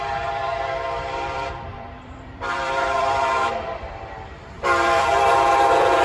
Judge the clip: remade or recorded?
remade